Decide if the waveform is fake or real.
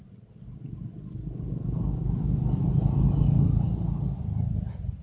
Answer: real